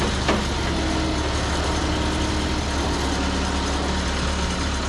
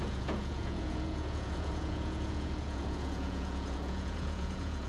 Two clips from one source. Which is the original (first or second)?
first